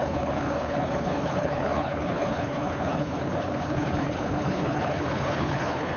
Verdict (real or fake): fake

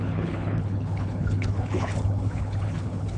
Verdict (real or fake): fake